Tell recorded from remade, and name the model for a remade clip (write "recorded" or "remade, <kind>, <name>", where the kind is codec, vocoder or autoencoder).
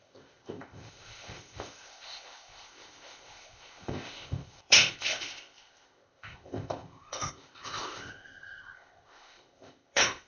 remade, codec, ZipCodec